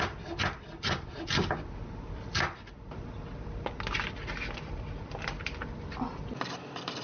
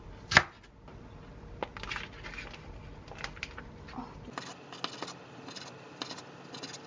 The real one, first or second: second